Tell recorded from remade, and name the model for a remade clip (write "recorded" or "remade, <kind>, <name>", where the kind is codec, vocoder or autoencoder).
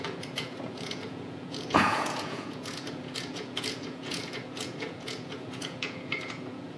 remade, vocoder, Vocos